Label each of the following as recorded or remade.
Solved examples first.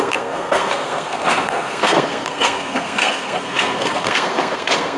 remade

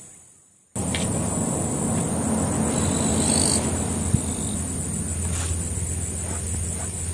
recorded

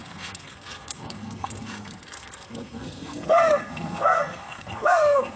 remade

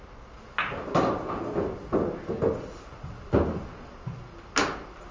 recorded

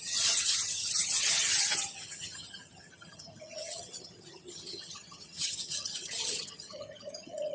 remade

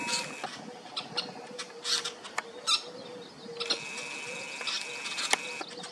recorded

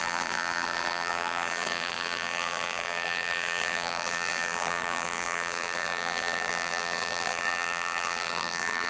remade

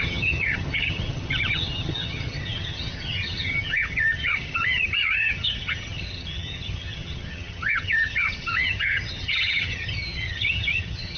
remade